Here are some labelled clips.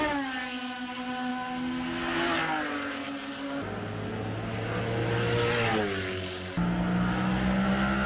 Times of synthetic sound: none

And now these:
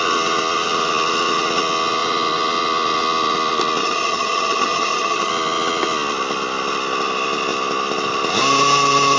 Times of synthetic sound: 3.8-5.3 (vocoder, HiFi-GAN)

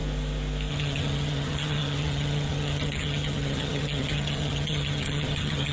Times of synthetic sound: 0.7-5.7 (vocoder, HiFi-GAN)

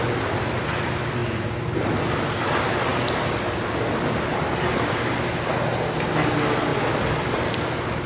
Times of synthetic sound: none

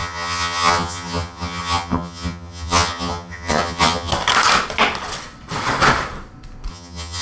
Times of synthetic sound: 0.0-4.1 (vocoder, HiFi-GAN); 6.7-7.2